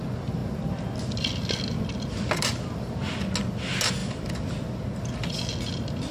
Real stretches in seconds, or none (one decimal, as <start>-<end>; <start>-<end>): 0.0-6.1